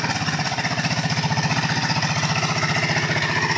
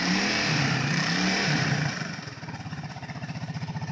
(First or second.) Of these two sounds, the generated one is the second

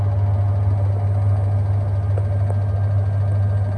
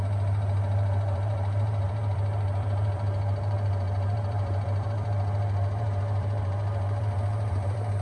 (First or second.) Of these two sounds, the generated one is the second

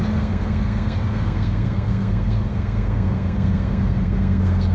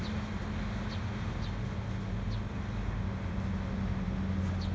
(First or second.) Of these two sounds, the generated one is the first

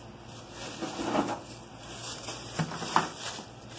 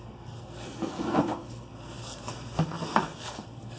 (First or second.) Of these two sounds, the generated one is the second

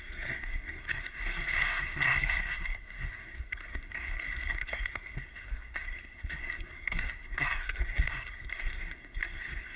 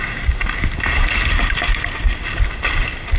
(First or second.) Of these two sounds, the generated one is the first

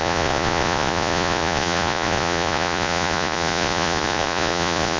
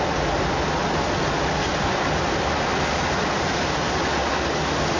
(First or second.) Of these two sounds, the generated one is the first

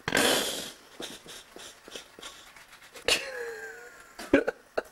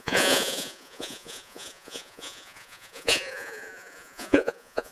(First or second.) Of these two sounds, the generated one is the second